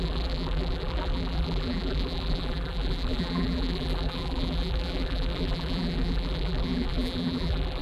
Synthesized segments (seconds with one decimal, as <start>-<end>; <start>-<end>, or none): 0.0-7.8